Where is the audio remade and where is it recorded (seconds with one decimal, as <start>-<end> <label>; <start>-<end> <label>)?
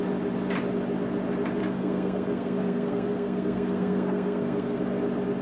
0.0-1.6 recorded; 1.6-4.8 remade; 4.8-5.4 recorded